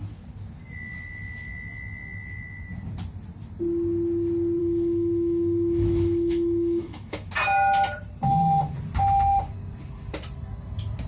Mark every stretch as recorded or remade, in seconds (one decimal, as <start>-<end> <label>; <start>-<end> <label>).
0.0-4.6 recorded; 4.6-7.3 remade; 7.3-11.1 recorded